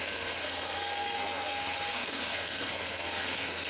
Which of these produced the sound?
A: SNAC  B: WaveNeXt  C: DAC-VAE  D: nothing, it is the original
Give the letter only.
A